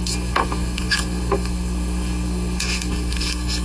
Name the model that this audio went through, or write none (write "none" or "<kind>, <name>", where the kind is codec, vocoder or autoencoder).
codec, SNAC